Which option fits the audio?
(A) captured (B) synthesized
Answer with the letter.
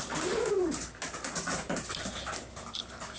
A